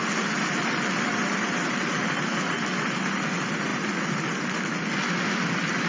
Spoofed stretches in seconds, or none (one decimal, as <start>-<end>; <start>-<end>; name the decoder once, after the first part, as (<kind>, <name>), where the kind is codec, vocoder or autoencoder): 1.1-1.7 (vocoder, BigVGAN v2)